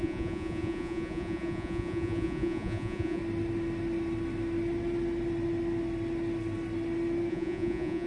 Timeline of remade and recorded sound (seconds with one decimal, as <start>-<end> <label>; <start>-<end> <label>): 0.0-3.2 remade; 3.2-7.3 recorded; 7.3-8.1 remade